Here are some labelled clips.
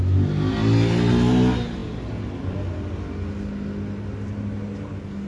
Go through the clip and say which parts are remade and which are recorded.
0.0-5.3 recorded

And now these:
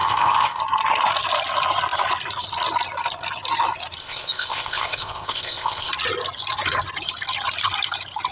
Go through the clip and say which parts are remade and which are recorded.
0.0-0.6 remade; 0.6-4.0 recorded; 4.0-5.9 remade; 5.9-8.3 recorded